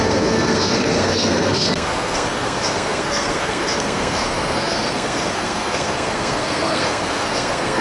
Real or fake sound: fake